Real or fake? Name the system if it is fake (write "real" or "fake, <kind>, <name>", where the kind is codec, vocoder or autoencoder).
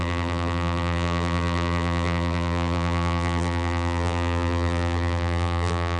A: fake, vocoder, BigVGAN v2